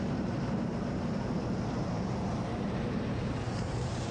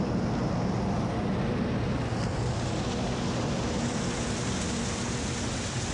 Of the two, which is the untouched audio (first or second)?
second